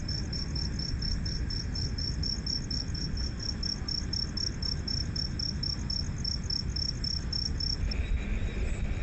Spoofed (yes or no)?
no